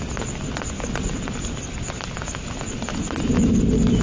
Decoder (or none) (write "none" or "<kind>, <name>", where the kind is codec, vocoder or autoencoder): none